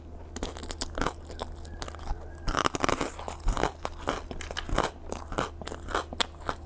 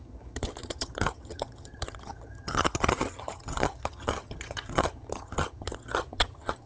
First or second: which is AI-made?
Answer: second